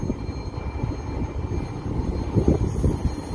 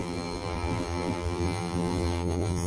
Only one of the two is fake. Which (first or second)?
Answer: second